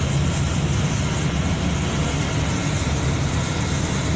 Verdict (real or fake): real